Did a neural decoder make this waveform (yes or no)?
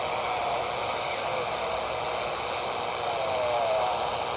no